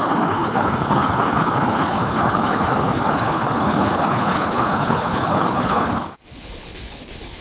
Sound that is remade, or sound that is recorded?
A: remade